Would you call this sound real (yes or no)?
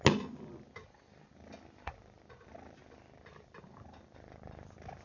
yes